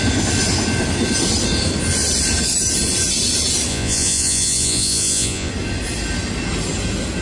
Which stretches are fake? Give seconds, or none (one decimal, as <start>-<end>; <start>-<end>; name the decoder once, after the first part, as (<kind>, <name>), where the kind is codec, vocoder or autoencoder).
3.7-5.5 (vocoder, Vocos)